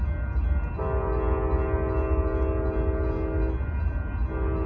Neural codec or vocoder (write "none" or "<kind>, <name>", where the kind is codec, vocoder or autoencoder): none